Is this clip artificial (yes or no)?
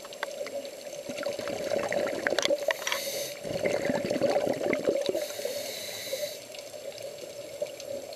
no